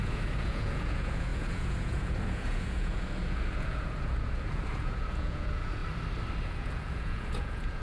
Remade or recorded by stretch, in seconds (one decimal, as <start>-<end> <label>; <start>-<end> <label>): 0.0-5.8 remade; 5.8-6.4 recorded; 6.4-7.8 remade

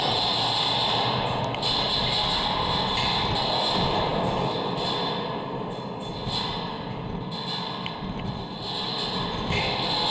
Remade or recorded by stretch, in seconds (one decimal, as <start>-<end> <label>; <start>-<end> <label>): 0.0-10.1 recorded

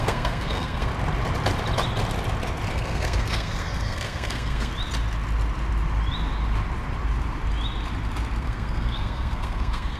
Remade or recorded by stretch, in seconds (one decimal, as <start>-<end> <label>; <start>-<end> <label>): 0.0-0.9 remade; 0.9-2.7 recorded; 2.7-4.7 remade; 4.7-8.4 recorded; 8.4-10.0 remade

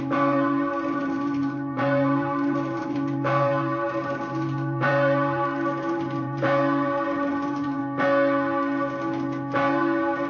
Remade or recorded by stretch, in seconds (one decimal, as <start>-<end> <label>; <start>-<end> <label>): 0.0-7.8 remade; 7.8-9.7 recorded; 9.7-10.3 remade

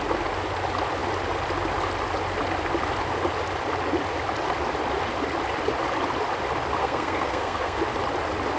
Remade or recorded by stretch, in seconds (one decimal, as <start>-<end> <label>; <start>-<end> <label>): 0.0-6.8 recorded; 6.8-7.8 remade; 7.8-8.6 recorded

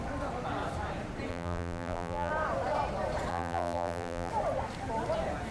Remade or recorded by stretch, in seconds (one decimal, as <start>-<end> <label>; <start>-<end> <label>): 0.0-1.3 recorded; 1.3-2.3 remade; 2.3-3.3 recorded; 3.3-4.3 remade; 4.3-5.5 recorded

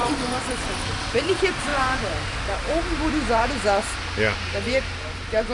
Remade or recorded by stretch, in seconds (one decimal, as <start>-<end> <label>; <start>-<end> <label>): 0.0-1.7 remade; 1.7-5.0 recorded; 5.0-5.5 remade